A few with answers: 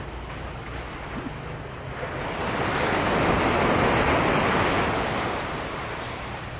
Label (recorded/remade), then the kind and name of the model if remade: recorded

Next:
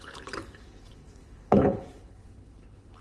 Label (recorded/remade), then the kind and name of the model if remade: remade, codec, HILCodec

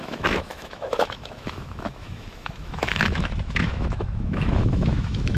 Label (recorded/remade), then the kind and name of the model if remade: remade, autoencoder, DAC-VAE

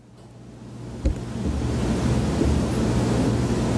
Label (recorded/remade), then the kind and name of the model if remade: recorded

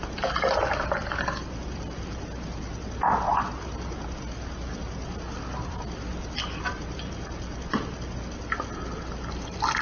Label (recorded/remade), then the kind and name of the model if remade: recorded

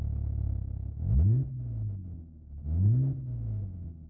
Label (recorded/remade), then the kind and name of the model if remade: recorded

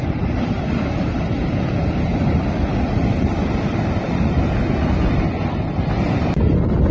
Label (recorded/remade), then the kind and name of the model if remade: recorded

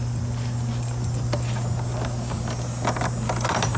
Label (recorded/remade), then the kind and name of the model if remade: recorded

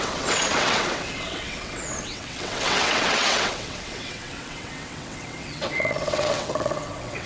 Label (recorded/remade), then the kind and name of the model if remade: remade, vocoder, WaveNeXt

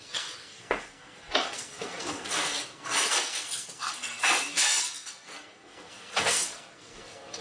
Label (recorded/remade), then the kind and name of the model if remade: remade, codec, SNAC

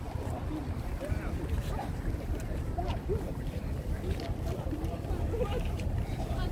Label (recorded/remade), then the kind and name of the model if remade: remade, vocoder, BigVGAN v2